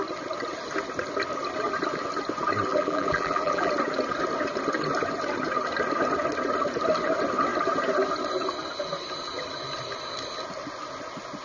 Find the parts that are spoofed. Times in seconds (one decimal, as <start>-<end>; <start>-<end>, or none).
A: 2.7-3.7